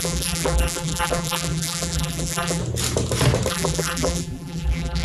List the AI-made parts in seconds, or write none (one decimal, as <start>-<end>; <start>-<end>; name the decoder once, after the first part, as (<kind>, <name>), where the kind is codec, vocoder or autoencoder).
0.0-2.6 (vocoder, BigVGAN v2); 3.5-5.0